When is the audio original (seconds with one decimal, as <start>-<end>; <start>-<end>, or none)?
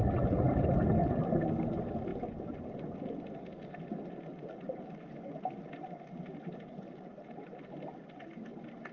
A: 0.0-8.9